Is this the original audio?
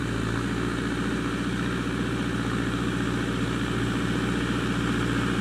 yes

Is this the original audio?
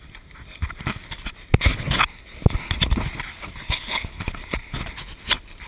yes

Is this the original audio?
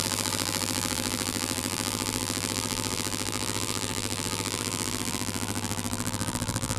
no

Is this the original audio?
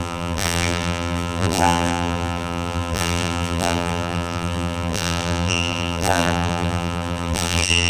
no